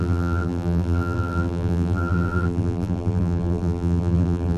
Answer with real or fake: fake